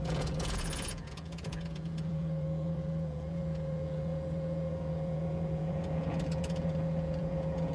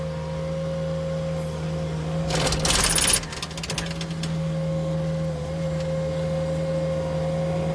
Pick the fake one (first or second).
first